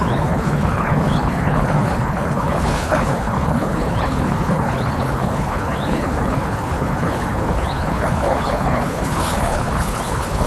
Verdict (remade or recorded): remade